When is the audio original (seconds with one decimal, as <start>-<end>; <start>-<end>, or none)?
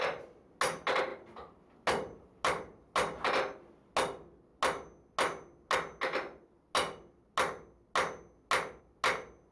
0.0-9.5